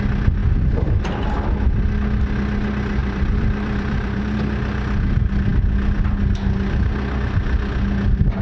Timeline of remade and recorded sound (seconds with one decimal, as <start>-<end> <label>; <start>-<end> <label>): 0.0-3.0 recorded; 3.0-4.2 remade; 4.2-8.4 recorded